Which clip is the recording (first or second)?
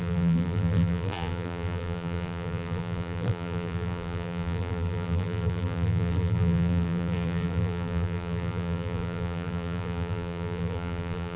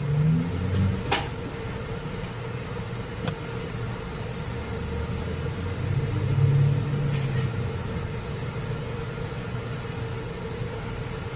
second